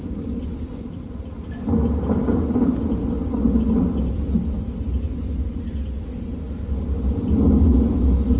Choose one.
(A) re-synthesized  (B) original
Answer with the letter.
B